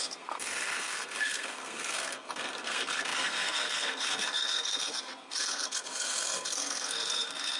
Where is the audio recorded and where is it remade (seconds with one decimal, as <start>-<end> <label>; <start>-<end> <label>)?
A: 0.0-7.6 remade